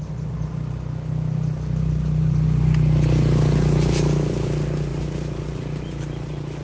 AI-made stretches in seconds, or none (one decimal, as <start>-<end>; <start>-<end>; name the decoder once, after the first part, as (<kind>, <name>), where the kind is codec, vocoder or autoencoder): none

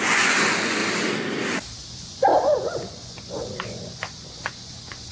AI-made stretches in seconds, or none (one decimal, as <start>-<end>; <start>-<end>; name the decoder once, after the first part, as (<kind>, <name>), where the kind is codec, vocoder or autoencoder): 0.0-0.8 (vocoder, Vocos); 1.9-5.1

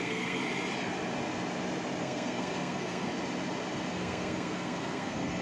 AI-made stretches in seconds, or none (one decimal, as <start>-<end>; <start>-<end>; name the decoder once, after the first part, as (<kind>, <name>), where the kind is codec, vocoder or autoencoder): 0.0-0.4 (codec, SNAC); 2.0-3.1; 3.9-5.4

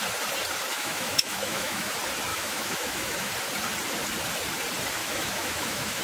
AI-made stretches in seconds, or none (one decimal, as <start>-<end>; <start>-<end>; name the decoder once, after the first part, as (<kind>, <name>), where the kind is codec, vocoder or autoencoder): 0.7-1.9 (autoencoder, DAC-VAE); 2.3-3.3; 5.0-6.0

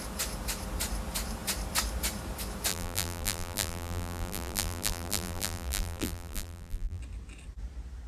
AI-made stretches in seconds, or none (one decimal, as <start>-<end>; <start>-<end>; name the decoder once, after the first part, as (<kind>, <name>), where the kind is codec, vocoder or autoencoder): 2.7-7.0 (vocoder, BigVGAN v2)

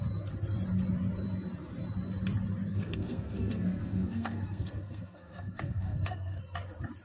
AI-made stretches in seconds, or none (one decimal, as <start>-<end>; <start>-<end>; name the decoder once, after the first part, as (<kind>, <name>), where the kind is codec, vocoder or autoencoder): 2.7-6.4 (codec, SNAC)